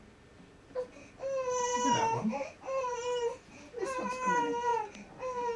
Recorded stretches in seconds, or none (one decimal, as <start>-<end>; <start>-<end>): 0.0-1.7; 3.7-5.6